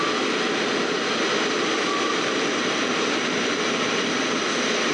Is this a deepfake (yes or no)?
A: no